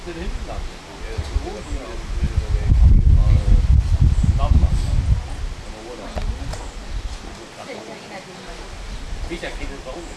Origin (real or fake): real